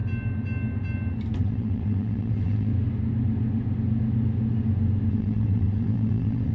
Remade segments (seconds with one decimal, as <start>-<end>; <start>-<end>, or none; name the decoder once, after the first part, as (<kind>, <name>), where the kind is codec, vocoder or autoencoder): 1.4-2.7 (vocoder, WaveNeXt); 5.1-6.5